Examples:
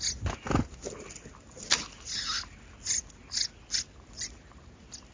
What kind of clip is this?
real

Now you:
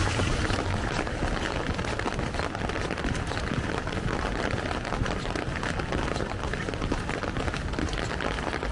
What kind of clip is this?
real